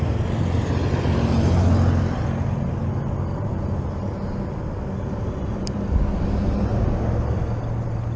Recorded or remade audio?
recorded